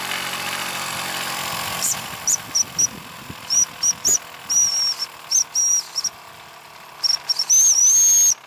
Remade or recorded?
recorded